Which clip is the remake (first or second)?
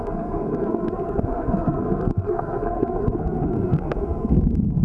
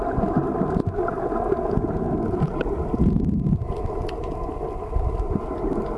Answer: first